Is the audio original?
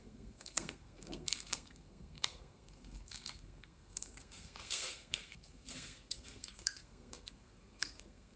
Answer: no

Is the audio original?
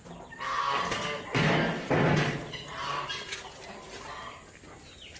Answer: yes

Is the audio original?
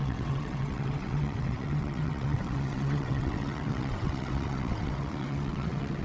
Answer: no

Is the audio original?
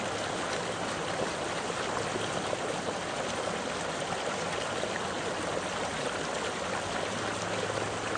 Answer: yes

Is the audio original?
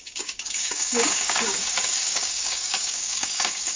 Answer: no